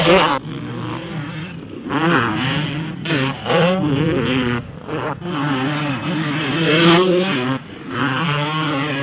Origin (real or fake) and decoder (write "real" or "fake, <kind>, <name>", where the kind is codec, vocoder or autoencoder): real